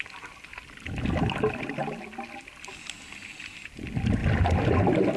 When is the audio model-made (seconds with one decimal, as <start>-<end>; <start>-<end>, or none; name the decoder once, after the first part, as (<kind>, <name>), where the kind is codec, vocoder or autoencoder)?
none